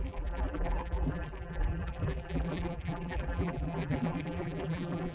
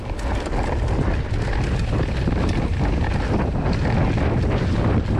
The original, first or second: second